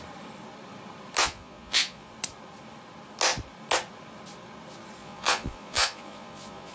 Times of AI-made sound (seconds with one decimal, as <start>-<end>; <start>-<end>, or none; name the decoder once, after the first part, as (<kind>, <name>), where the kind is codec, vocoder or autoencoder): 1.2-2.1 (vocoder, Vocos); 5.0-6.7